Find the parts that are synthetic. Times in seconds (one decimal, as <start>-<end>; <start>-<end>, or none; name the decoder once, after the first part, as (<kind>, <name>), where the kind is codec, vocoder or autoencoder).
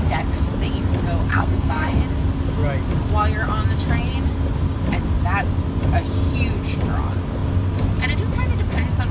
1.3-2.0 (codec, SNAC)